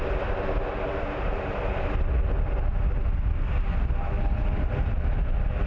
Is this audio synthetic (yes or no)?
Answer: no